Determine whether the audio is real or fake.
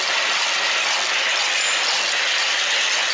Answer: real